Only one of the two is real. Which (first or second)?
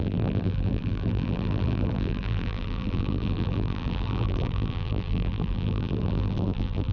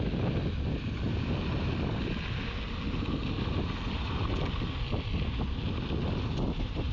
second